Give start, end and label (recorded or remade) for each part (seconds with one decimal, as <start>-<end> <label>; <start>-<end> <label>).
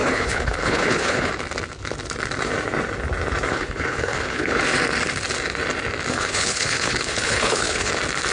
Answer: 0.0-1.3 remade; 1.3-3.5 recorded; 3.5-4.6 remade; 4.6-6.1 recorded; 6.1-7.9 remade; 7.9-8.3 recorded